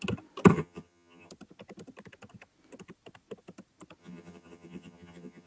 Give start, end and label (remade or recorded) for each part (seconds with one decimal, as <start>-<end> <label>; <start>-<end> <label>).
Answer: 0.0-0.5 recorded; 0.5-1.3 remade; 1.3-4.0 recorded; 4.0-5.5 remade